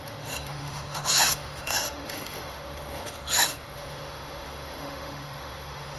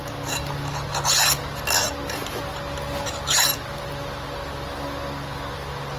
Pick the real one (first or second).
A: second